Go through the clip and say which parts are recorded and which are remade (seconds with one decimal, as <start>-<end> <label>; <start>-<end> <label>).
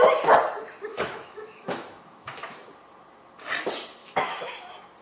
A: 0.0-0.9 recorded; 0.9-2.7 remade; 2.7-4.0 recorded; 4.0-4.5 remade; 4.5-5.0 recorded